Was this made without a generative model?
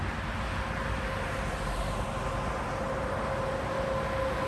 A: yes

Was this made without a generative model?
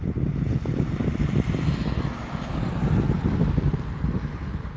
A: yes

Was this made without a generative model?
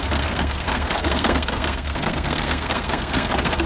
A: no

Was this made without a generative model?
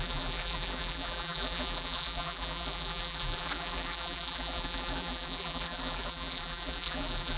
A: no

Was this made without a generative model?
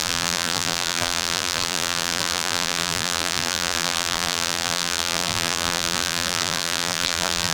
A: no